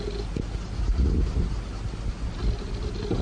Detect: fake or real real